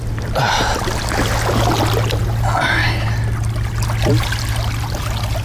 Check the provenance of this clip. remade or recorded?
recorded